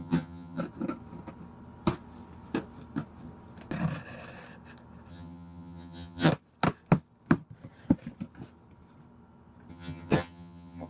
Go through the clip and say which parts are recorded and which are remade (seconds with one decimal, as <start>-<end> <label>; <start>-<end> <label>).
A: 0.0-0.6 remade; 0.6-5.1 recorded; 5.1-6.3 remade; 6.3-9.7 recorded; 9.7-10.9 remade